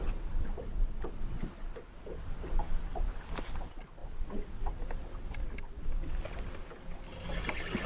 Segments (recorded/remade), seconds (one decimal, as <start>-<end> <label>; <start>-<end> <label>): 0.0-7.9 recorded